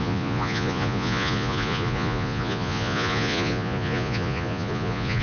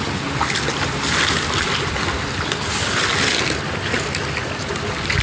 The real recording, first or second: second